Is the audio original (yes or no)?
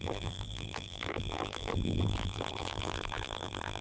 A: no